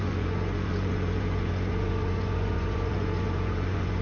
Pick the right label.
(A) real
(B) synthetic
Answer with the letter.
B